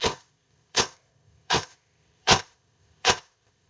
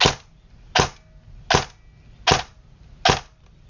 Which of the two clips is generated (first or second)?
first